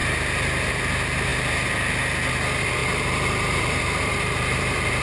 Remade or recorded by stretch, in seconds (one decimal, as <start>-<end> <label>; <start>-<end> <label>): 0.0-2.8 recorded; 2.8-5.0 remade